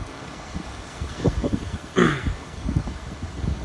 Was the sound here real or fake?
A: fake